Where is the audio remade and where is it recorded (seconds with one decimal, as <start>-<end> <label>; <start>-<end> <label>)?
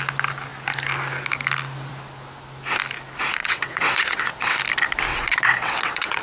0.0-3.4 recorded; 3.4-4.6 remade; 4.6-5.1 recorded; 5.1-6.2 remade